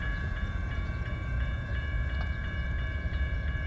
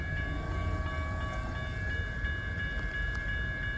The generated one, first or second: first